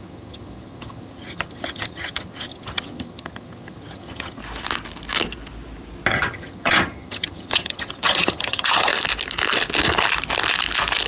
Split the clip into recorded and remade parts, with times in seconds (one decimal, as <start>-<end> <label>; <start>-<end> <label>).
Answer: 0.0-4.4 remade; 4.4-6.1 recorded; 6.1-8.9 remade; 8.9-11.1 recorded